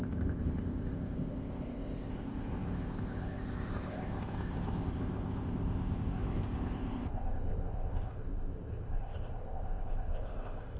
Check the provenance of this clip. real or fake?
fake